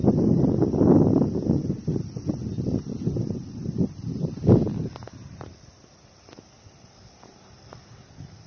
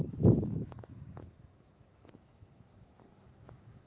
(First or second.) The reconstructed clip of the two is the second